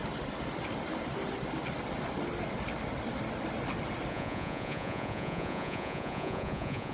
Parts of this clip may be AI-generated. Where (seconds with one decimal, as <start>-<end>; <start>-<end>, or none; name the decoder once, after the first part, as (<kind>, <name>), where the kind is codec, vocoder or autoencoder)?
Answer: 4.1-6.9 (vocoder, Vocos)

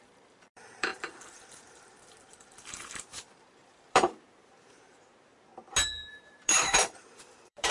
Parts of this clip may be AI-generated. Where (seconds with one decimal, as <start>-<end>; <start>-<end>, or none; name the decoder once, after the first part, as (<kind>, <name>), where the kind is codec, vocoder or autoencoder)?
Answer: 0.0-5.5 (vocoder, BigVGAN v2); 6.1-7.7

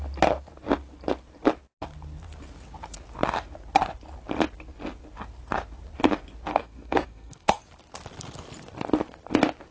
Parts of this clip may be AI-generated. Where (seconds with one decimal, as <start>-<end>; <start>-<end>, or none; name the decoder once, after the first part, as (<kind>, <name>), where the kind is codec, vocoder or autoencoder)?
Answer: 6.5-7.6 (codec, SNAC)

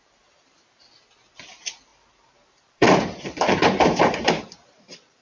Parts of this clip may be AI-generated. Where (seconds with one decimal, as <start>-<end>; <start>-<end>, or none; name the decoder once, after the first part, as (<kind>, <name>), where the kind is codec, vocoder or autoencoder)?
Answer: 1.9-5.2 (vocoder, BigVGAN v2)

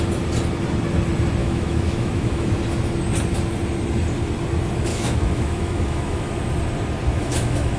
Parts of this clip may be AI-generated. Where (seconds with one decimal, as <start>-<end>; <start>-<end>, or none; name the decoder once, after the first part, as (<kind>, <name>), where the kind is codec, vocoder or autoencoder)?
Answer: 1.4-2.5 (autoencoder, DAC-VAE); 4.9-6.3; 7.1-7.8

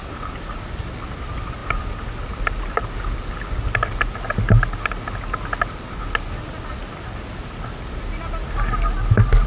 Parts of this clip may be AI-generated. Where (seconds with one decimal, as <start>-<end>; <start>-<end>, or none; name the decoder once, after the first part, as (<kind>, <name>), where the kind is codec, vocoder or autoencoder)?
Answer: none

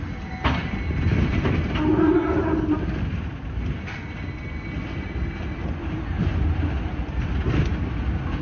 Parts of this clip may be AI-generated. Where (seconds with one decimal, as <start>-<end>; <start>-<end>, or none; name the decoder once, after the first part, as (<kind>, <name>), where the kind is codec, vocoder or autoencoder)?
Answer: none